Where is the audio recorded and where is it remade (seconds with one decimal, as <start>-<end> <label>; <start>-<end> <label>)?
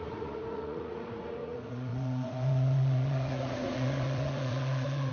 0.0-5.1 remade